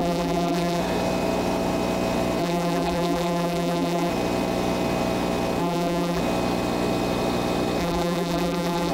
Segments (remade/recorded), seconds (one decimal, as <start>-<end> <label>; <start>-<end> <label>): 0.0-0.8 remade; 0.8-2.4 recorded; 2.4-4.1 remade; 4.1-5.6 recorded; 5.6-6.2 remade; 6.2-7.8 recorded; 7.8-8.9 remade